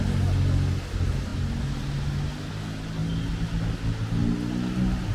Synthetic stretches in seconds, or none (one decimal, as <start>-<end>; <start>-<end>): none